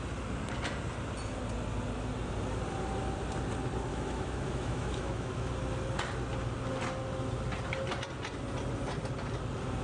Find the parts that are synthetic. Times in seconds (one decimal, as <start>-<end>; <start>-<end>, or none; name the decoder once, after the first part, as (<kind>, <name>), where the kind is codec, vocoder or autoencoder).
3.9-5.5 (autoencoder, DAC-VAE)

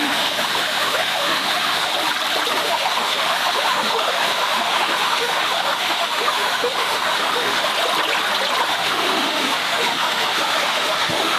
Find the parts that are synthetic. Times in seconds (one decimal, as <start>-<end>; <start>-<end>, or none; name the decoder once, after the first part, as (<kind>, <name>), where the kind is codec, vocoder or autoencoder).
0.0-1.9 (autoencoder, DAC-VAE); 2.5-7.7; 8.7-11.4